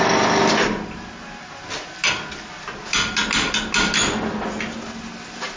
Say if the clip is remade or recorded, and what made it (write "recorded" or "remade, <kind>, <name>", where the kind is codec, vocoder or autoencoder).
recorded